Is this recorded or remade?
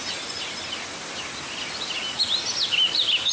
recorded